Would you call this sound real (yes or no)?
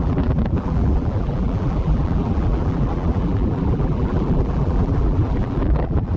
no